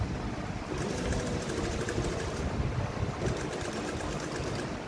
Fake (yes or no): no